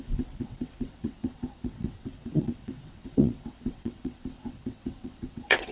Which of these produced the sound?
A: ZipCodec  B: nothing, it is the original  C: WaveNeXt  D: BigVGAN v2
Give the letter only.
C